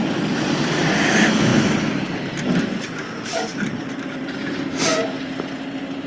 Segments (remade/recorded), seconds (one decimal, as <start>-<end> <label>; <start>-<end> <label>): 0.0-6.1 recorded